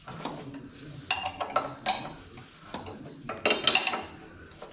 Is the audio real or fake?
real